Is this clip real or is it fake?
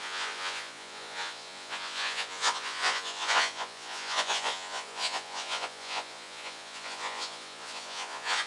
fake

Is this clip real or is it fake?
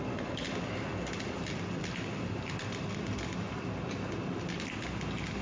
real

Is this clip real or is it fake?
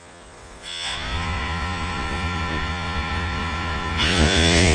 fake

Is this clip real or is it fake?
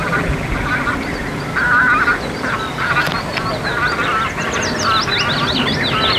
real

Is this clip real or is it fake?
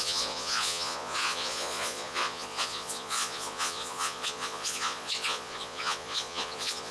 fake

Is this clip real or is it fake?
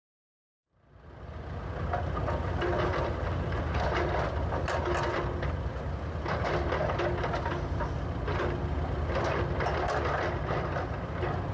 real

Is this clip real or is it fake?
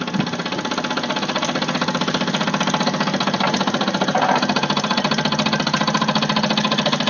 real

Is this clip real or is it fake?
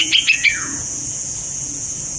fake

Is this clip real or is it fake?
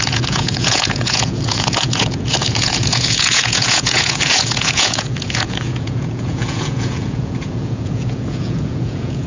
fake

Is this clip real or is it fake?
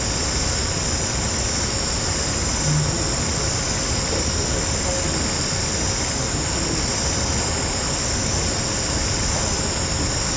real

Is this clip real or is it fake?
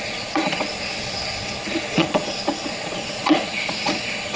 fake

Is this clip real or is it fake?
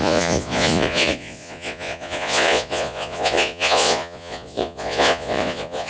fake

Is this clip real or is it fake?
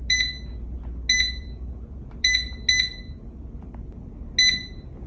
real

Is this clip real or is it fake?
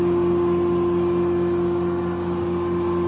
real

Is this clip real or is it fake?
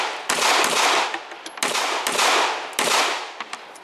real